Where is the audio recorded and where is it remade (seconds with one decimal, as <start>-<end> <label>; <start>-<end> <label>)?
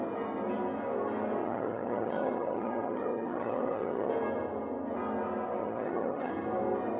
0.0-1.4 recorded; 1.4-4.1 remade; 4.1-5.6 recorded; 5.6-6.3 remade; 6.3-7.0 recorded